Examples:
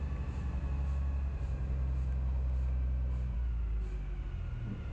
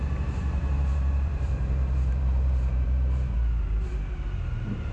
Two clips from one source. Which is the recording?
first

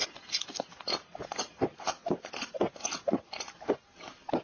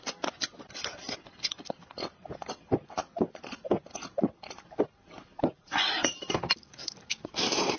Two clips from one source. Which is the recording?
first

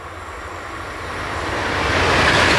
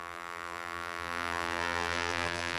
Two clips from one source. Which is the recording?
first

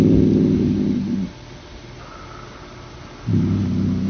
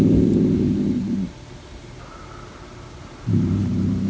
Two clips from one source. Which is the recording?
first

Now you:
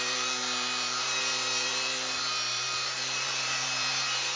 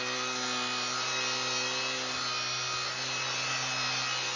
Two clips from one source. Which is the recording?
second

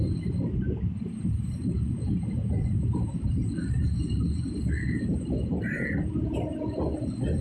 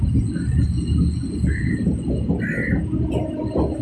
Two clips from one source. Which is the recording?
second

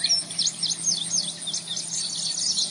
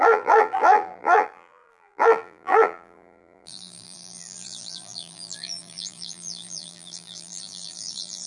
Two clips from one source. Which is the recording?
first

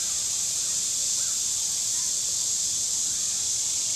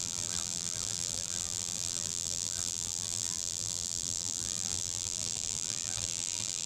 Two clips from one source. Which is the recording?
first